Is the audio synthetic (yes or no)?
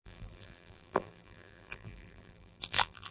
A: yes